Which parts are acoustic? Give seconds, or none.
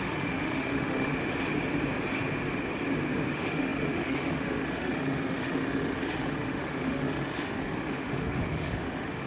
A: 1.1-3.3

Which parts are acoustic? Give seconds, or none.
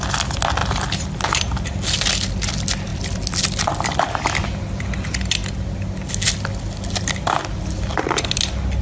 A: 0.0-8.8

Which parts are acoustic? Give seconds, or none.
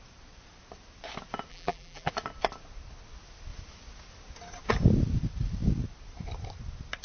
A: 0.0-1.5; 2.1-7.0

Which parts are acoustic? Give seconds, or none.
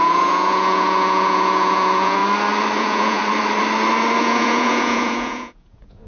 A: 2.2-2.8; 3.2-4.2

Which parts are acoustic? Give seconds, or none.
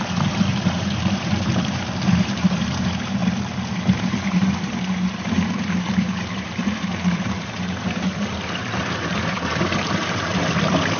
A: 3.2-3.7; 10.3-11.0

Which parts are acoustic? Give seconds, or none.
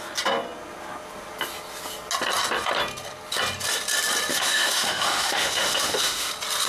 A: 0.0-4.3; 6.3-6.7